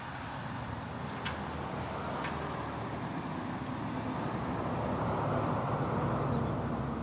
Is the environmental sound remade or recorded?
recorded